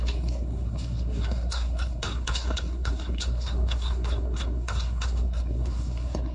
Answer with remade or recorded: remade